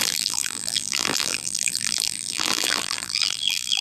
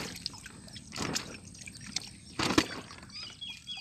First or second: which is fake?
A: first